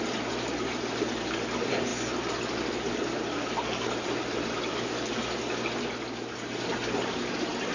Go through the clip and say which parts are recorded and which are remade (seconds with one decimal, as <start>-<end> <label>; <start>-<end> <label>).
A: 0.0-7.7 recorded